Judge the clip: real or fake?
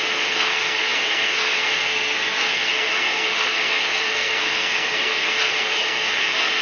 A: fake